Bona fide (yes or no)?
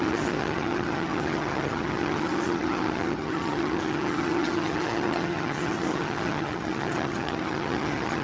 no